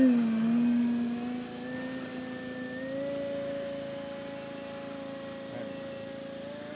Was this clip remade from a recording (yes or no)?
no